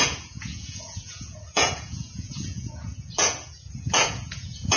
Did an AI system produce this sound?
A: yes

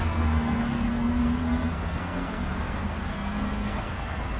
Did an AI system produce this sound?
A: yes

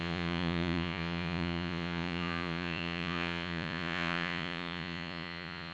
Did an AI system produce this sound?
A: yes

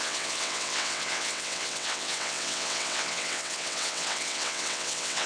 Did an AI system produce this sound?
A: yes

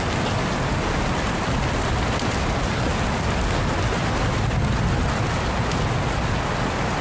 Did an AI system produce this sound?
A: no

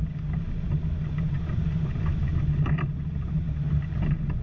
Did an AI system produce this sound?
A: no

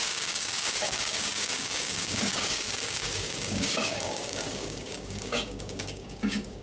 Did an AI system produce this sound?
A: yes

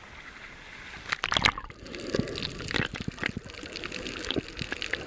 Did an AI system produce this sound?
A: no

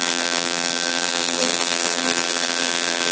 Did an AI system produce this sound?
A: yes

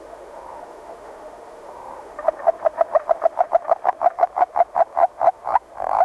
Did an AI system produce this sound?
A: yes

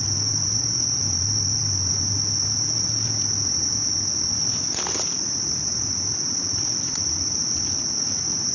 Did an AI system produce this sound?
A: no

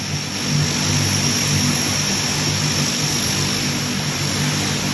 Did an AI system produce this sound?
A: no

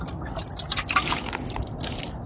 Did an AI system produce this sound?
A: no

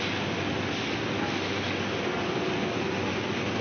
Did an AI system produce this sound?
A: no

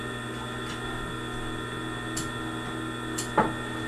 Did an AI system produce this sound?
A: no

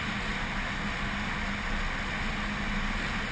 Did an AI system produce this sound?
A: no